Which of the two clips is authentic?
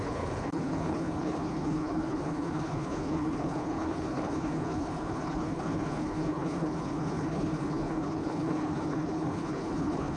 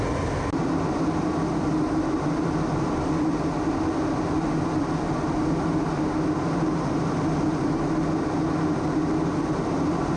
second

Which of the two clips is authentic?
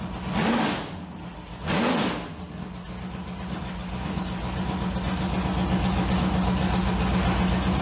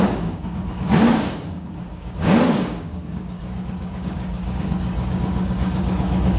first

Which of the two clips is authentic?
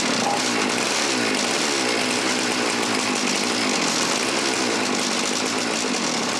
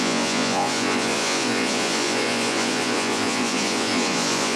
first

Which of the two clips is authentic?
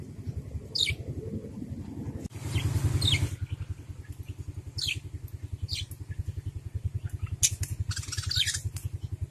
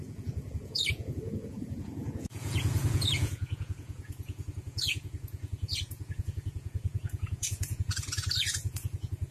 first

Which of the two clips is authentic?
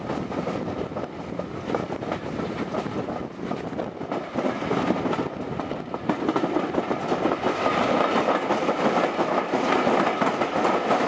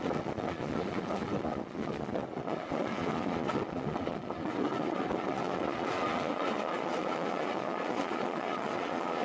first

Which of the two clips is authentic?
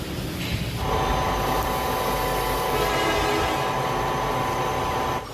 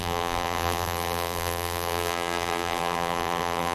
first